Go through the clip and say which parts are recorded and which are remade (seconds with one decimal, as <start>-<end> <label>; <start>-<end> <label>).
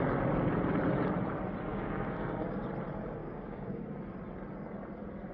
0.0-1.7 recorded; 1.7-2.6 remade; 2.6-3.2 recorded; 3.2-3.8 remade; 3.8-5.3 recorded